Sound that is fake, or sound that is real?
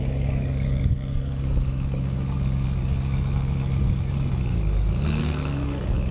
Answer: fake